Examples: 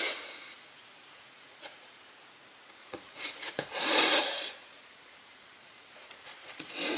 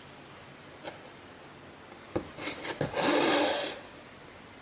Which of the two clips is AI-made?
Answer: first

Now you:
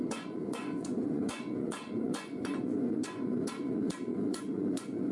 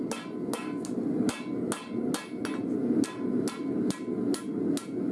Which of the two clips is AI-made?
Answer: first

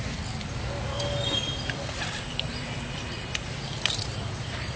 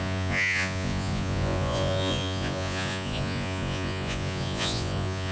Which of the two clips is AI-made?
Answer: second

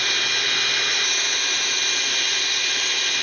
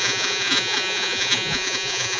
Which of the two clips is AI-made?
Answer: second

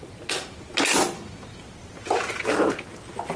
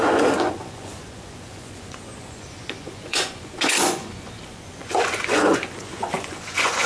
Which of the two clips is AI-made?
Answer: second